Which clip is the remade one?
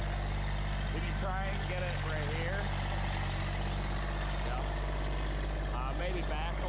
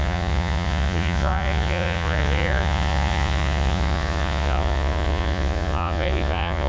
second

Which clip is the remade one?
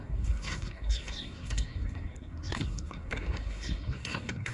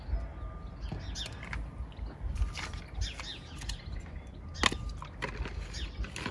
first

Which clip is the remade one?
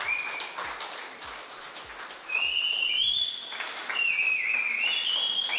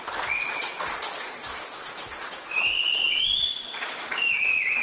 second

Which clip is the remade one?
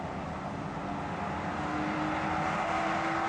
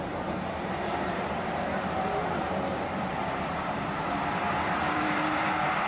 second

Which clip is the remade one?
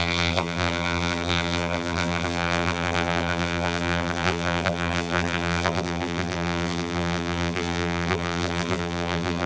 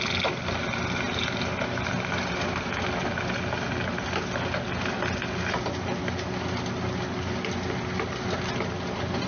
first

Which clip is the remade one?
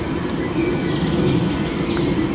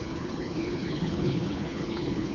second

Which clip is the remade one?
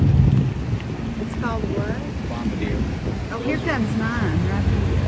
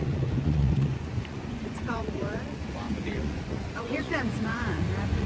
second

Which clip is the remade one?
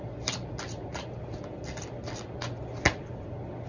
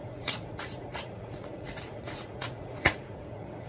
second